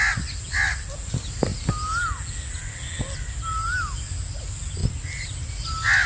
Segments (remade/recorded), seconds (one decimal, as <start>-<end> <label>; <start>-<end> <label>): 0.0-6.1 recorded